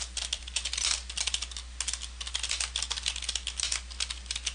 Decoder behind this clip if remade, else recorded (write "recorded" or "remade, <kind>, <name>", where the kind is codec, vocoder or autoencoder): recorded